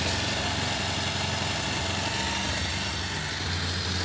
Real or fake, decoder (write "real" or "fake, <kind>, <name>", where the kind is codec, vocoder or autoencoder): real